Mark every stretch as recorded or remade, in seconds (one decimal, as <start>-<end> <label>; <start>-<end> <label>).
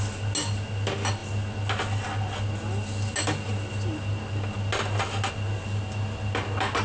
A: 0.0-6.8 recorded